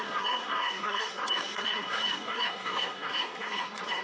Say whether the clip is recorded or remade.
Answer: remade